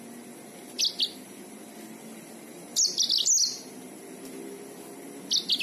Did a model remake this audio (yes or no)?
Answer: no